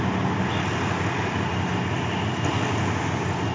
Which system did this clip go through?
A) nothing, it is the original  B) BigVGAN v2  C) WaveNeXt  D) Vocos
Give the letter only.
A